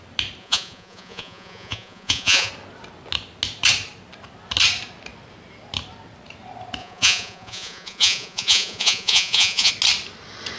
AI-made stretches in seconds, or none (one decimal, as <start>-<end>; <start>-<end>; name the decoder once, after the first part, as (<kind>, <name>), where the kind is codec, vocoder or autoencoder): 0.4-2.5 (vocoder, Vocos); 6.8-9.7